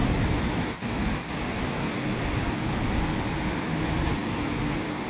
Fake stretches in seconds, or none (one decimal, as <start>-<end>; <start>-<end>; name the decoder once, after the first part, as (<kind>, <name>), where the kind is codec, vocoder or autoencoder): 0.0-1.6 (autoencoder, DAC-VAE)